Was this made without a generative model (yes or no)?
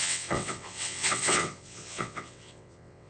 no